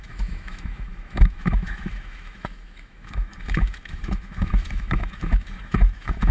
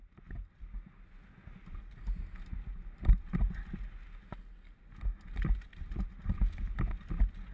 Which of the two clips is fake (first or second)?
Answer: first